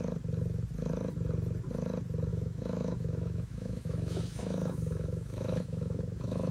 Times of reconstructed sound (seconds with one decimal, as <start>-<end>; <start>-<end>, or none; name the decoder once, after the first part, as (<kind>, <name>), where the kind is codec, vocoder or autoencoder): 2.3-6.5 (autoencoder, DAC-VAE)